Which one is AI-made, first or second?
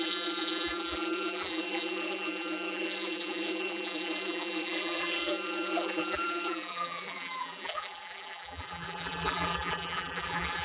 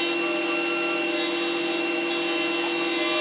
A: first